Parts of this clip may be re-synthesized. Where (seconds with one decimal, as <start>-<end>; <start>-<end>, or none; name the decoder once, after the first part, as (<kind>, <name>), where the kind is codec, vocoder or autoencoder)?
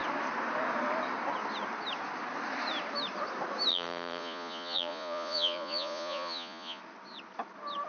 3.7-6.8 (vocoder, Vocos)